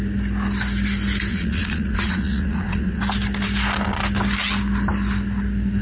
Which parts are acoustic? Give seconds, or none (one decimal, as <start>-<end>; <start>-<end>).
0.0-1.3; 3.0-5.8